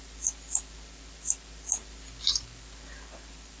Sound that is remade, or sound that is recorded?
recorded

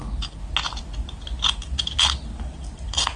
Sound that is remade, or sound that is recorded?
recorded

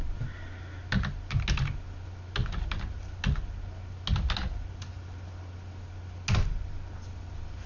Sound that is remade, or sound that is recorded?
recorded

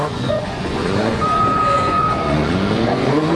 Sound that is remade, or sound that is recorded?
remade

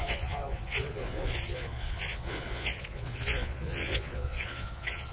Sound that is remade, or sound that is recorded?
remade